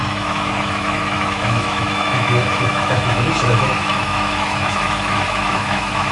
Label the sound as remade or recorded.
remade